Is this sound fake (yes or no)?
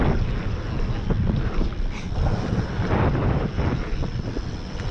no